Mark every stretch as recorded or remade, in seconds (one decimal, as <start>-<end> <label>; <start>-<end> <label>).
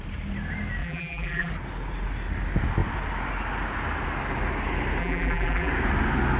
0.0-0.8 recorded; 0.8-1.5 remade; 1.5-5.0 recorded; 5.0-5.7 remade; 5.7-6.4 recorded